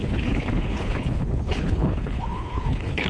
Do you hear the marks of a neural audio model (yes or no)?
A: yes